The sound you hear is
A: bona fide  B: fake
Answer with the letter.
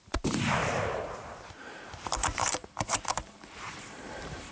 B